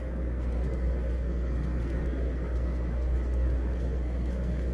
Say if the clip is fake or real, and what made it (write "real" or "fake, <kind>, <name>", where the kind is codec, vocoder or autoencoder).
fake, codec, SNAC